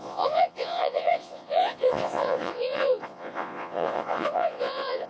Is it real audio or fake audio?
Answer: fake